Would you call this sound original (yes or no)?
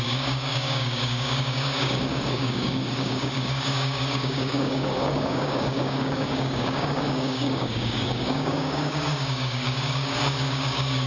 no